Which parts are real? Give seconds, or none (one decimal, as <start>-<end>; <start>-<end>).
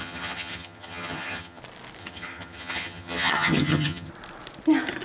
1.6-2.0; 4.1-5.0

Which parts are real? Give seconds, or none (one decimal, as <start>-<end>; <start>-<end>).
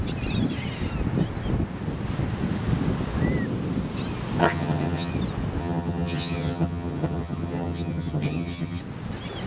0.0-4.4; 5.1-5.6; 8.8-9.5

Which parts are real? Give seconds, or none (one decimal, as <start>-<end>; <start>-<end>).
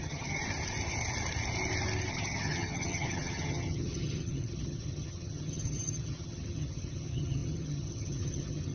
0.4-2.1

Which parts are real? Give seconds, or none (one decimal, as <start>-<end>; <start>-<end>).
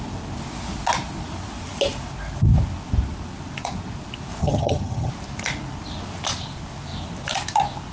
0.0-4.4; 5.1-7.9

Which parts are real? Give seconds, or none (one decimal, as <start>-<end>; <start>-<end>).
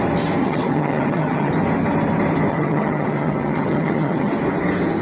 0.0-0.4; 1.5-2.5; 4.3-5.0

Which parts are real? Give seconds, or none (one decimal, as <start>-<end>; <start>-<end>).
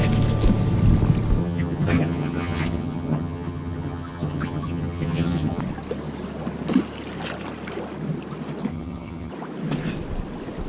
0.0-1.4; 5.6-8.7; 9.3-10.7